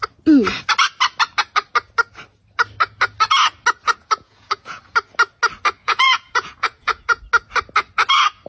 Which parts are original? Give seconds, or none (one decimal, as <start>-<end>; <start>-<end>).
0.0-4.0; 4.8-5.8; 7.2-8.5